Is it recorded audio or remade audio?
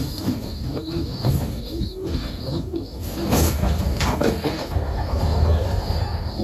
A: remade